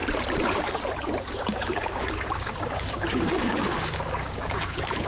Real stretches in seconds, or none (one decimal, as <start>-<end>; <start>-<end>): 0.0-1.2